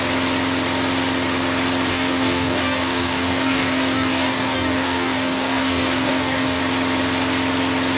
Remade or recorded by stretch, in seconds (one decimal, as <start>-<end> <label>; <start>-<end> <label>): 0.0-1.9 recorded; 1.9-6.6 remade; 6.6-8.0 recorded